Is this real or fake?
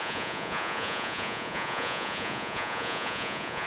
fake